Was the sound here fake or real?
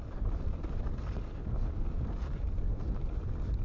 real